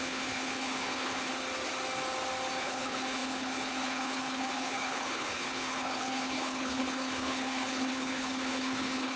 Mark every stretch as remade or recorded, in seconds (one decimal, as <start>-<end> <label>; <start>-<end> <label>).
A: 0.0-1.3 remade; 1.3-2.6 recorded; 2.6-9.2 remade